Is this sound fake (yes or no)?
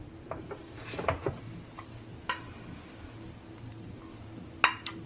no